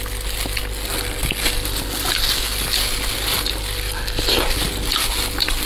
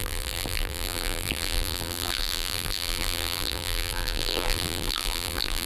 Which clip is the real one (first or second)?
first